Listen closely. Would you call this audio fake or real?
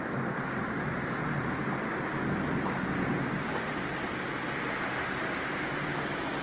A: real